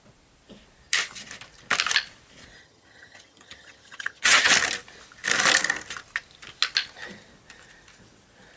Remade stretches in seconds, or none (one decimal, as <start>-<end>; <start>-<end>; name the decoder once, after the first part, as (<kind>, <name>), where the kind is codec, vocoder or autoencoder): 2.6-4.5 (vocoder, HiFi-GAN)